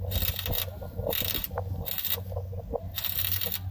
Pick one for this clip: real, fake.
real